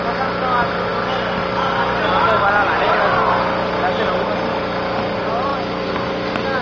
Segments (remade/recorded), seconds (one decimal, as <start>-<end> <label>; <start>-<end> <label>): 0.0-6.6 recorded